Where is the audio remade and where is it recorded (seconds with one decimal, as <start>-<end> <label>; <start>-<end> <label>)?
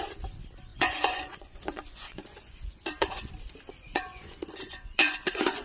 0.0-0.7 recorded; 0.7-3.3 remade; 3.3-3.9 recorded; 3.9-5.6 remade